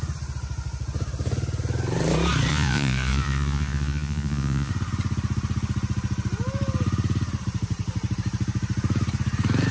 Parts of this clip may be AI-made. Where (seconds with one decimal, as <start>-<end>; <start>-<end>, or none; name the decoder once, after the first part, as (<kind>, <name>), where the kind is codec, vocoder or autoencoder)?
2.5-4.7 (vocoder, Vocos)